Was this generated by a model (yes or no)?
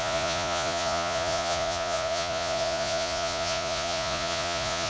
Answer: yes